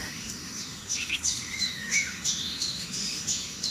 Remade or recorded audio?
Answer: remade